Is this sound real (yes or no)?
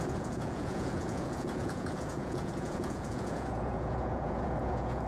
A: no